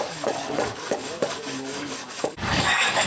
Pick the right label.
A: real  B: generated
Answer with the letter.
B